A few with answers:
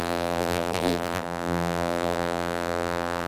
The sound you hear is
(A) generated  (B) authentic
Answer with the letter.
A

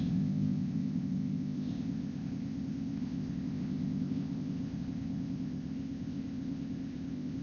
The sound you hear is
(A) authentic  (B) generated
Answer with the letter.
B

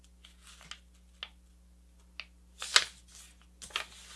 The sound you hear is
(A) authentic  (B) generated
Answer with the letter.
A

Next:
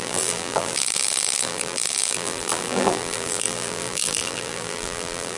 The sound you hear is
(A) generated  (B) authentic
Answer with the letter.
A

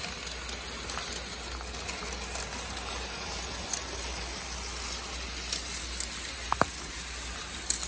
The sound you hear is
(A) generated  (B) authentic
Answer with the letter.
B